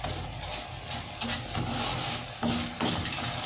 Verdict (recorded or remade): recorded